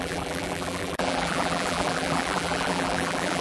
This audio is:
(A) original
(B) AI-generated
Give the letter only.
B